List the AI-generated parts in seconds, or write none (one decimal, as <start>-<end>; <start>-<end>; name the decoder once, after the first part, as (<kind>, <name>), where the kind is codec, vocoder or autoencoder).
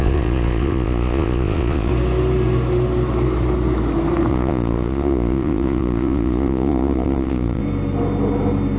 0.0-1.9 (vocoder, Vocos); 4.3-7.6